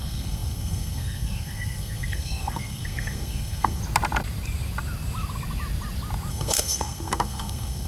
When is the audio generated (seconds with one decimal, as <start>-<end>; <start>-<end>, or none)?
0.0-3.8; 6.3-7.9